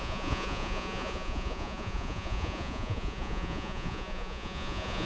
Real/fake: fake